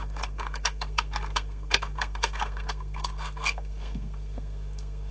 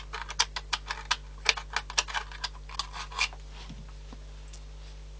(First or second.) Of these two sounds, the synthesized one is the first